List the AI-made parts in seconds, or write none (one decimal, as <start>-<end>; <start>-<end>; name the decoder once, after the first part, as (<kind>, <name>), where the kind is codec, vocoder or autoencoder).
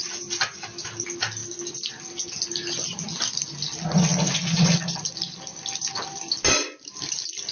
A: none